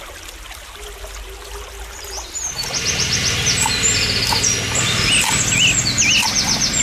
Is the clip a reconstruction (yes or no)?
no